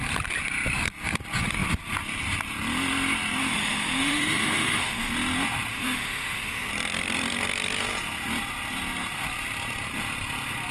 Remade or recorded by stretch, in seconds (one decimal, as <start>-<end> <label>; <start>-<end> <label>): 0.0-3.4 recorded; 3.4-5.1 remade; 5.1-5.7 recorded; 5.7-6.7 remade; 6.7-10.7 recorded